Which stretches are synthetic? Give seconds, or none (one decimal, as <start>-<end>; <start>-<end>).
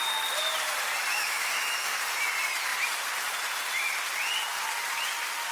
1.1-2.0